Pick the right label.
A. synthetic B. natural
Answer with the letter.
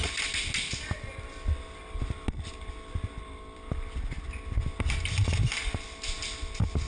B